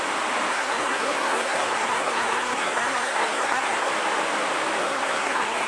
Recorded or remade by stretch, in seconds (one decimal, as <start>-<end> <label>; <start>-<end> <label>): 0.0-0.5 recorded; 0.5-3.9 remade; 3.9-4.8 recorded; 4.8-5.7 remade